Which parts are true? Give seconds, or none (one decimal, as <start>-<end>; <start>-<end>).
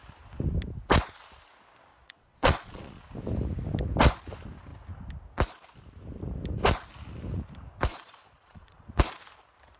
0.0-1.9; 3.0-7.9; 9.0-9.8